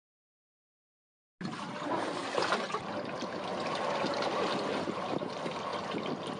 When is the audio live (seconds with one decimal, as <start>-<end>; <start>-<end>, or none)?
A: 0.0-6.4